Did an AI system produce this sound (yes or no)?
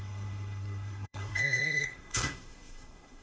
yes